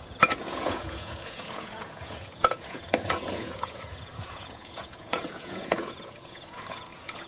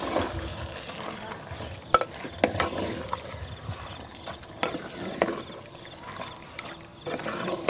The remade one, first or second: first